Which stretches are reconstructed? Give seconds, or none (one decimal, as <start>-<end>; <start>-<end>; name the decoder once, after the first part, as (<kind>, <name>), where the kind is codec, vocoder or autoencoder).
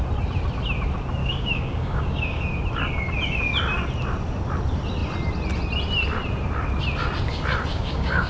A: 1.2-2.4 (codec, DAC); 7.7-8.3